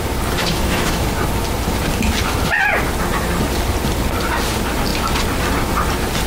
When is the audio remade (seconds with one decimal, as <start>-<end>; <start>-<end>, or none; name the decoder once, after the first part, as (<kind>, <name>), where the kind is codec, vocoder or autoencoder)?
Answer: 0.4-1.1 (autoencoder, DAC-VAE)

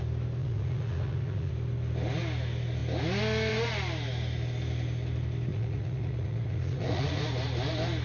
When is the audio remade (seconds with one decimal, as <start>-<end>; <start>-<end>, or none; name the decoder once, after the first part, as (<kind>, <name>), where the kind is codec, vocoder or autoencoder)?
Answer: 0.4-1.5 (vocoder, Vocos); 5.5-7.2

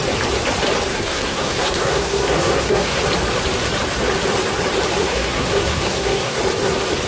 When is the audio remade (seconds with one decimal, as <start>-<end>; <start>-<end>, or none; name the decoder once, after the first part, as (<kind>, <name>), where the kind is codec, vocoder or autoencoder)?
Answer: 0.9-3.0 (codec, SNAC); 5.0-6.4

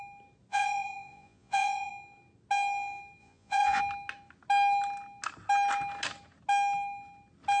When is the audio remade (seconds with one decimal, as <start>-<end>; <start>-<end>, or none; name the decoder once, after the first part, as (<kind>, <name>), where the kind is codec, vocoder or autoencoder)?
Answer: 0.5-1.9 (vocoder, Vocos); 3.2-3.8

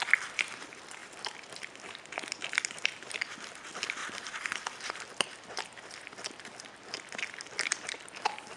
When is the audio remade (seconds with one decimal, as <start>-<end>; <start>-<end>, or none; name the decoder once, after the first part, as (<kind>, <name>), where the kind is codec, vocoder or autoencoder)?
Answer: 1.0-1.9 (vocoder, BigVGAN v2); 4.0-8.6